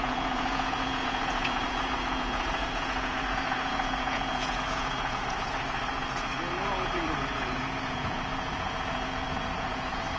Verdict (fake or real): fake